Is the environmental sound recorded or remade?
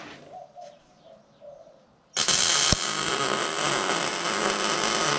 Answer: recorded